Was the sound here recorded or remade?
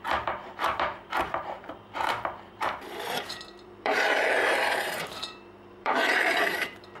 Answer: remade